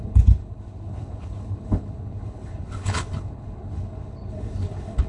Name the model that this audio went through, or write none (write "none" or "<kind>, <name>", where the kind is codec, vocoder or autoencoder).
codec, HILCodec